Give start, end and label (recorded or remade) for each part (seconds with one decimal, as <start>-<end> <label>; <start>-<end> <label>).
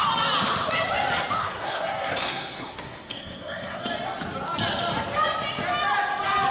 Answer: 0.0-1.4 recorded; 1.4-3.8 remade; 3.8-6.5 recorded